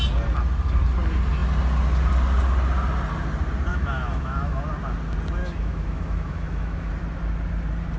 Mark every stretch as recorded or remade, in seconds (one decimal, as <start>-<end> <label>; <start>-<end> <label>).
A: 0.0-3.7 recorded; 3.7-4.6 remade; 4.6-5.4 recorded; 5.4-6.9 remade; 6.9-8.0 recorded